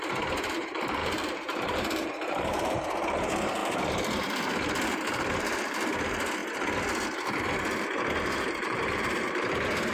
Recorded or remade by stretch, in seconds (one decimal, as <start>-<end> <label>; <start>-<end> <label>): 0.0-6.4 remade; 6.4-7.4 recorded; 7.4-9.9 remade